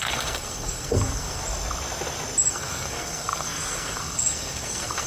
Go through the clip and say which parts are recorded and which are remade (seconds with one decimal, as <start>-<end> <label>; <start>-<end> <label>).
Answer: 0.0-1.4 remade; 1.4-2.5 recorded; 2.5-5.1 remade